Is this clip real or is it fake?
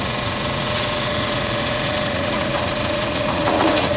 fake